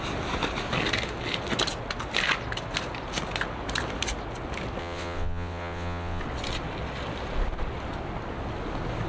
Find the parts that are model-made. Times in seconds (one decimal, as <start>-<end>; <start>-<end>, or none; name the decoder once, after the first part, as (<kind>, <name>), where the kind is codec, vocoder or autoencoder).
4.8-6.2 (vocoder, WaveNeXt)